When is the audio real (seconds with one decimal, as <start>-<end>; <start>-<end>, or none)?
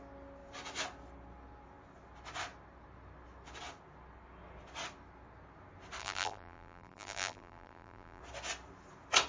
0.0-6.0; 8.2-9.3